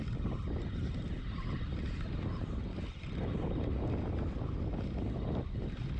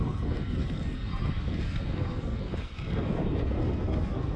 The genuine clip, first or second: first